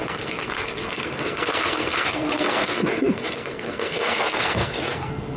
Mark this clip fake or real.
fake